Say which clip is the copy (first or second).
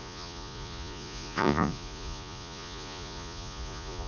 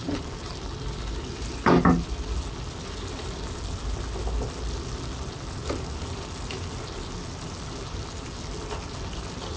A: first